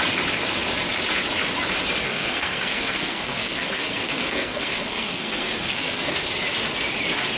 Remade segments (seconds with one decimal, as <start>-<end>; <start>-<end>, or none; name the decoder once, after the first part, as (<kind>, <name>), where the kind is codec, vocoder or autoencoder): 2.1-6.1 (codec, SNAC)